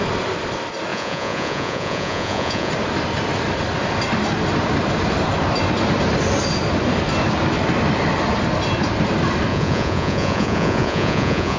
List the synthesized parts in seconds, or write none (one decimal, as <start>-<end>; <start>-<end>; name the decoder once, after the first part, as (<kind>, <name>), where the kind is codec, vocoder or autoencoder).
0.9-2.7 (vocoder, Vocos); 9.5-11.6